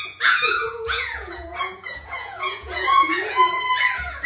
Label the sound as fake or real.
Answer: fake